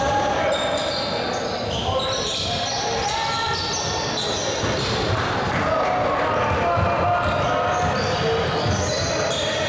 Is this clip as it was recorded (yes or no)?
yes